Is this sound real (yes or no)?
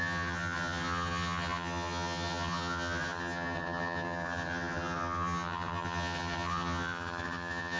no